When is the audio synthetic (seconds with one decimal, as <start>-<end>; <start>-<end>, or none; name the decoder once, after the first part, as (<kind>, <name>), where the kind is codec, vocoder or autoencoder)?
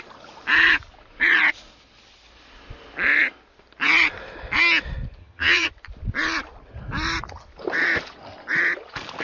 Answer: 5.2-5.7 (vocoder, HiFi-GAN)